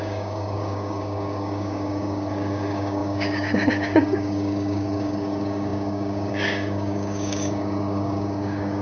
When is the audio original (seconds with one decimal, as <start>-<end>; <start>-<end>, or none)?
none